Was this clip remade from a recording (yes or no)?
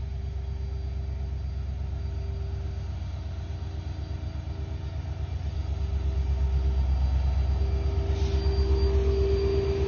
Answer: no